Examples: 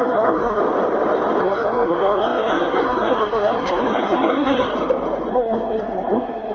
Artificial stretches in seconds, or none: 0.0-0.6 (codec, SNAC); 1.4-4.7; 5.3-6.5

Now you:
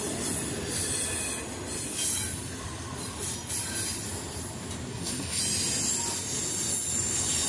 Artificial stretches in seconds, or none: 4.9-5.4 (codec, SNAC)

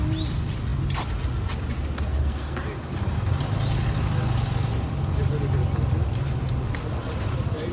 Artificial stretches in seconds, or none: 2.1-2.6 (codec, SNAC)

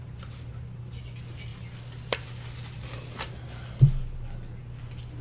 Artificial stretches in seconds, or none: none

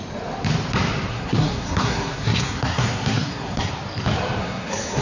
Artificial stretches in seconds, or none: 1.1-3.7 (codec, SNAC); 4.4-5.0

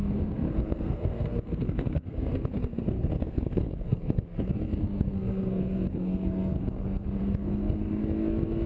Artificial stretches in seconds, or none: 0.0-8.0 (codec, SNAC)

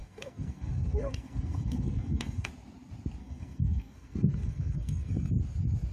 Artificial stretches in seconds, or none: 0.0-2.5 (codec, SNAC); 3.2-5.3

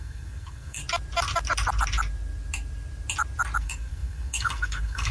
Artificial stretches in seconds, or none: 0.0-0.8 (codec, SNAC); 3.6-5.1